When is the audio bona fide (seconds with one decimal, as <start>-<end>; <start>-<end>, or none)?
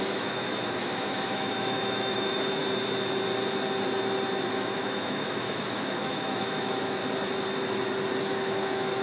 2.6-4.5; 7.0-8.2